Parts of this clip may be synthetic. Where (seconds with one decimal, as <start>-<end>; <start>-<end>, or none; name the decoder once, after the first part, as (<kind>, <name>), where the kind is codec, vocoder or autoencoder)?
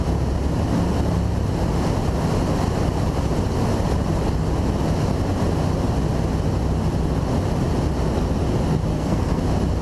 8.9-9.4 (codec, SNAC)